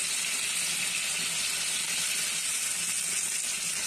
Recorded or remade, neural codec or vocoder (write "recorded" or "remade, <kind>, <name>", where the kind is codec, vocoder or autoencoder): recorded